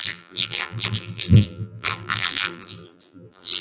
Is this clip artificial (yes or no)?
yes